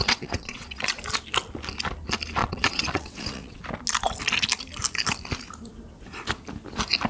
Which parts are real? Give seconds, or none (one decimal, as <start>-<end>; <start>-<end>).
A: 0.9-2.4; 3.6-7.1